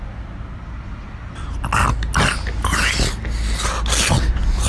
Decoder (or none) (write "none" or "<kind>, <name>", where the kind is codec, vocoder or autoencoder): none